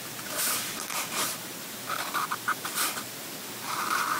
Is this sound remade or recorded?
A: recorded